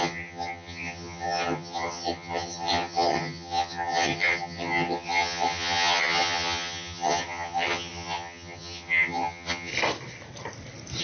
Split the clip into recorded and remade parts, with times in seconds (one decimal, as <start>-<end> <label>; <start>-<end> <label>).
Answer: 0.0-9.7 remade; 9.7-11.0 recorded